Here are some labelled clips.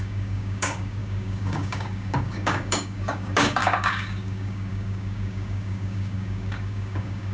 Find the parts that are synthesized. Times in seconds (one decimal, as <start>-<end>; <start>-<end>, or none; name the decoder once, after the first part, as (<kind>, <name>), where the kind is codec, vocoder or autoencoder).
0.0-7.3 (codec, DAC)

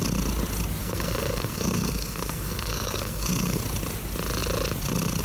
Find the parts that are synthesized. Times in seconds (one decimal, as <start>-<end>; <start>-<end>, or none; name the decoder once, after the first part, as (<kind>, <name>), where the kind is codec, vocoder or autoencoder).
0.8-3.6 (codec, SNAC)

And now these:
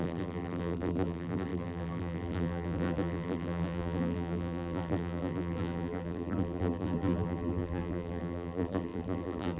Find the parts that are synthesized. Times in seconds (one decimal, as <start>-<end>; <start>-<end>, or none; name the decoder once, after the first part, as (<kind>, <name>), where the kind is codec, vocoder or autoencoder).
0.0-9.6 (vocoder, BigVGAN v2)

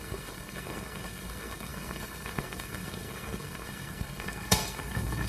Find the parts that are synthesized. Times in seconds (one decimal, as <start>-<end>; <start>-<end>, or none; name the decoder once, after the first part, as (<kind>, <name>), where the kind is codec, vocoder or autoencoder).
0.0-5.3 (codec, SNAC)